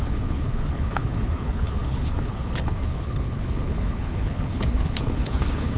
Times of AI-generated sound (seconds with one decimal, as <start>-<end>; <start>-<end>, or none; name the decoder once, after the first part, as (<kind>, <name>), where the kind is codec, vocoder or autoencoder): 0.0-5.8 (codec, HILCodec)